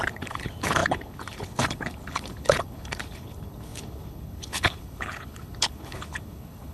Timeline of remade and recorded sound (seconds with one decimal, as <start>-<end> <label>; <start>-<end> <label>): 0.0-6.7 remade